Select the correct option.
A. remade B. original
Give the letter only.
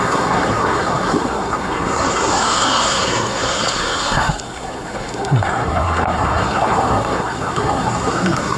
A